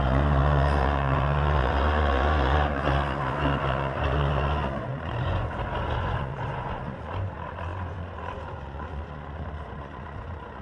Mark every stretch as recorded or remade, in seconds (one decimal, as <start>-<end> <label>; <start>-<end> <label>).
0.0-10.6 remade